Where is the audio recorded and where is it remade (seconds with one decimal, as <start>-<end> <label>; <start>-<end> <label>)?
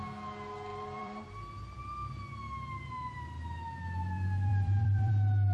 0.0-0.7 recorded; 0.7-2.1 remade; 2.1-4.5 recorded; 4.5-5.1 remade; 5.1-5.5 recorded